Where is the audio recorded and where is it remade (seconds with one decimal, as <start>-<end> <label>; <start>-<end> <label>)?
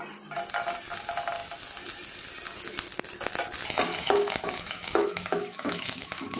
0.0-3.9 recorded; 3.9-6.4 remade